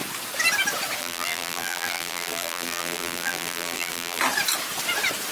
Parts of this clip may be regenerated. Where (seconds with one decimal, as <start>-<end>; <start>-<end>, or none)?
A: 1.0-4.2